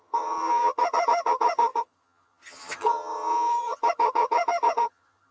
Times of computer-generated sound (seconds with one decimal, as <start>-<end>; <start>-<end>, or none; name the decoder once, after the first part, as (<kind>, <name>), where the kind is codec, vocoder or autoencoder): 0.0-5.3 (vocoder, HiFi-GAN)